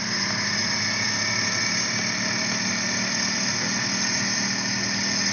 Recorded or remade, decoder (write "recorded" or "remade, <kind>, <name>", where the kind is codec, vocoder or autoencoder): recorded